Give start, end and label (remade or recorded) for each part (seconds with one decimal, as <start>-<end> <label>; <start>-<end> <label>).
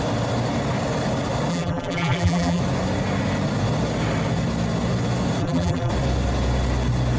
0.0-1.5 recorded; 1.5-2.6 remade; 2.6-5.4 recorded; 5.4-5.9 remade; 5.9-7.2 recorded